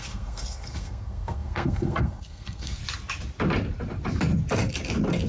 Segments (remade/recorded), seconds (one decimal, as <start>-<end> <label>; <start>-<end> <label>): 0.0-2.8 remade; 2.8-5.3 recorded

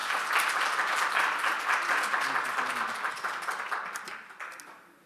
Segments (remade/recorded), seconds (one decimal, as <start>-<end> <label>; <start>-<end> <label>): 0.0-3.1 recorded; 3.1-5.1 remade